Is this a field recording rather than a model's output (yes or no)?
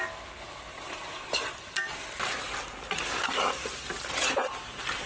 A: yes